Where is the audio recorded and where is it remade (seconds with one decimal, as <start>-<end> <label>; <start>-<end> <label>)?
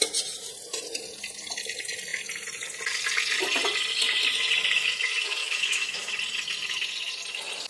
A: 0.0-5.4 recorded; 5.4-6.1 remade; 6.1-7.7 recorded